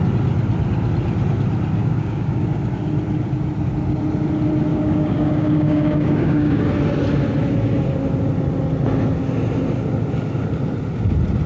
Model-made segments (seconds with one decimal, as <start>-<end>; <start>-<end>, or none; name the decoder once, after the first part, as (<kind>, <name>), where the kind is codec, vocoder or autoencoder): 1.8-2.6 (codec, DAC); 4.7-6.6